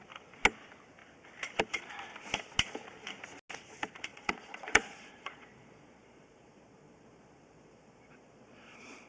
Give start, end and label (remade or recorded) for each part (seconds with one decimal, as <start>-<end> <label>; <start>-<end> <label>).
0.0-4.1 recorded; 4.1-9.1 remade